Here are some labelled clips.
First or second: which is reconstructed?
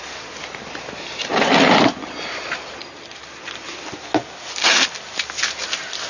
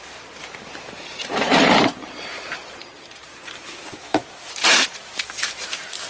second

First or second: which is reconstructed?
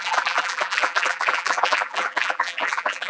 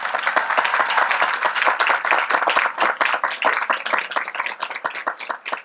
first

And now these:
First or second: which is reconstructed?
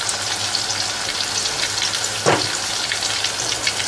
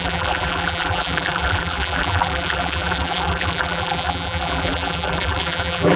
second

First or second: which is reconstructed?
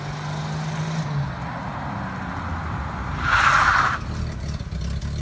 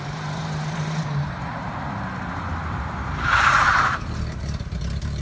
second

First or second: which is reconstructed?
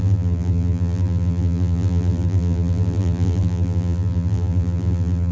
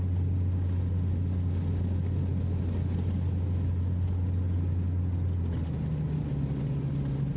first